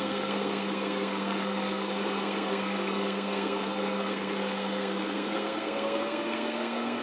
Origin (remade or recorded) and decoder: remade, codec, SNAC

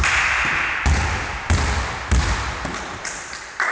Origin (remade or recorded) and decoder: recorded